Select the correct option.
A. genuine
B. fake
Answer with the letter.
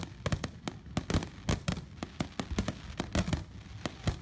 A